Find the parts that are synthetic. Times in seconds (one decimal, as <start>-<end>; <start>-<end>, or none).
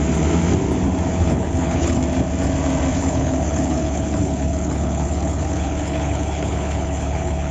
1.1-2.0; 2.9-7.5